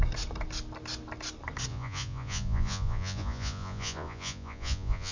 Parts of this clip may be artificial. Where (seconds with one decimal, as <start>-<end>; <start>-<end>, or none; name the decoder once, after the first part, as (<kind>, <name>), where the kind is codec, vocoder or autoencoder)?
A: 1.7-5.1 (vocoder, Vocos)

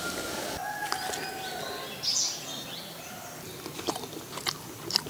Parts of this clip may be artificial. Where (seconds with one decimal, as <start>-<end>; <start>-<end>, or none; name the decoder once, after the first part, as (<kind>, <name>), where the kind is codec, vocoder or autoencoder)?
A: none

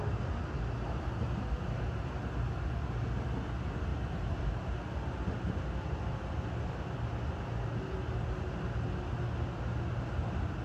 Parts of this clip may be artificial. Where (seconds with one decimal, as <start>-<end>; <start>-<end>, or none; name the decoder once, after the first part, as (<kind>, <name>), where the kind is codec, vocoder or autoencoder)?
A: none

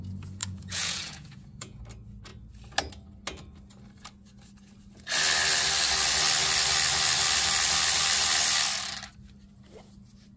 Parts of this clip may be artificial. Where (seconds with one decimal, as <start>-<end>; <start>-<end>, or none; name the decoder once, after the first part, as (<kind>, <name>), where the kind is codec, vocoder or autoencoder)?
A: 0.4-1.8 (vocoder, Vocos)